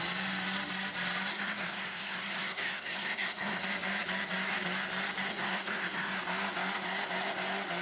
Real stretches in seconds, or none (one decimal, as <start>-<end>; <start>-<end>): 0.0-1.3; 3.6-5.3; 6.2-7.8